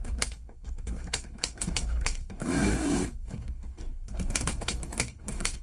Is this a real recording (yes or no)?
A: no